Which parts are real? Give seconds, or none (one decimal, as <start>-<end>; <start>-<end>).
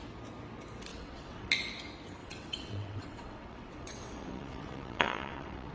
0.0-0.9; 1.5-2.2